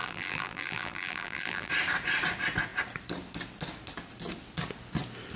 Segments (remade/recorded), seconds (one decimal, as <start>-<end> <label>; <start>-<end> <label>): 0.0-1.7 remade; 1.7-5.4 recorded